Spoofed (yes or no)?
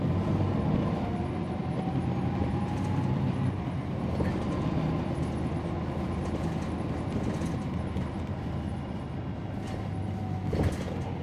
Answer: no